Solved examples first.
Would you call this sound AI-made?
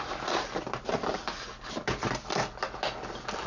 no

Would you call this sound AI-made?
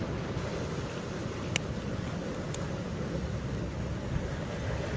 no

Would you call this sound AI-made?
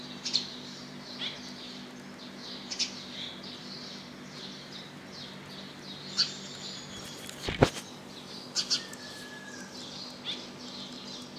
no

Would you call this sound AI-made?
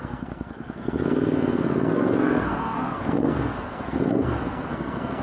yes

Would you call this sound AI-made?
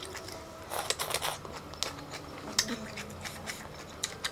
no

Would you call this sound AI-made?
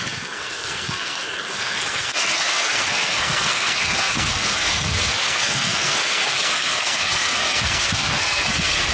yes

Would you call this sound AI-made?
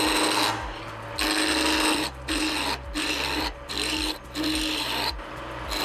no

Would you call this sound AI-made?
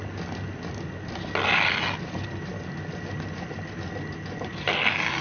no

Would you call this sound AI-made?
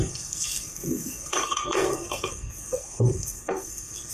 yes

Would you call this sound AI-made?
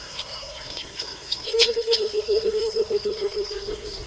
yes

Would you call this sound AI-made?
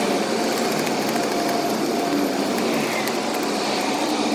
no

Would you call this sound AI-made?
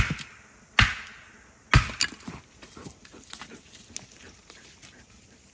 no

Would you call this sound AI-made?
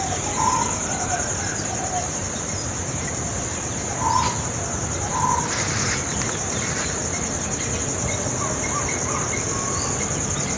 no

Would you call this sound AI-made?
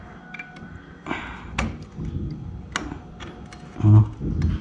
no